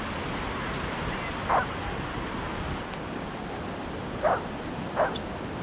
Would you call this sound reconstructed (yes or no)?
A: no